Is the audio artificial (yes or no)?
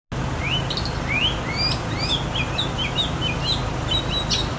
no